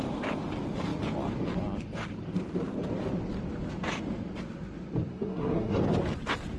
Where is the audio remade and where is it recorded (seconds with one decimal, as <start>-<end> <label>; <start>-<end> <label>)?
0.0-5.1 recorded; 5.1-5.8 remade; 5.8-6.6 recorded